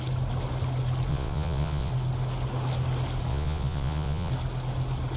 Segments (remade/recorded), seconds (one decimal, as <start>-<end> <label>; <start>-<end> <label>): 0.0-1.1 recorded; 1.1-1.9 remade; 1.9-3.3 recorded; 3.3-4.3 remade; 4.3-5.2 recorded